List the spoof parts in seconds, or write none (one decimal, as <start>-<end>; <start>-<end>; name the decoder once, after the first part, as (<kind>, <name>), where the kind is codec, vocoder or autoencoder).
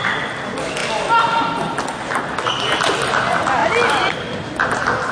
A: none